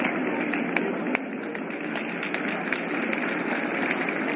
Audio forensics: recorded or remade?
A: recorded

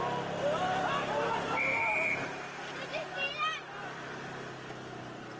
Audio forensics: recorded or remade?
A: recorded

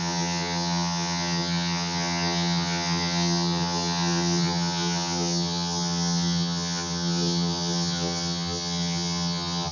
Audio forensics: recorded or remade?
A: remade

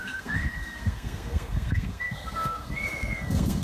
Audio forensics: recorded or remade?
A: remade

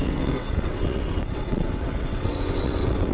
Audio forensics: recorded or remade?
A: remade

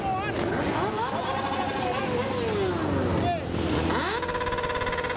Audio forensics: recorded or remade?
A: recorded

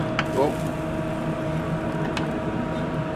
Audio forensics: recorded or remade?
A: recorded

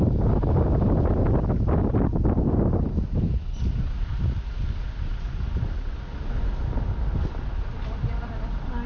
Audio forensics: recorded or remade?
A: recorded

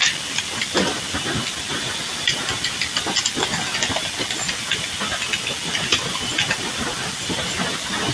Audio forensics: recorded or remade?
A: recorded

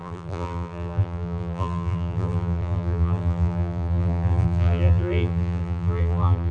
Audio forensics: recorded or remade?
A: remade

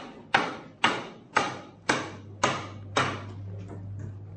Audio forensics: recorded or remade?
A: recorded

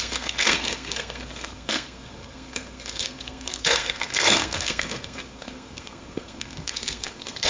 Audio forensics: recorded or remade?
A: remade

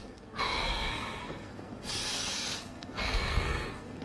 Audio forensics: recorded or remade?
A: remade